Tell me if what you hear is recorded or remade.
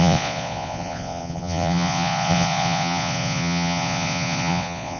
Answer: remade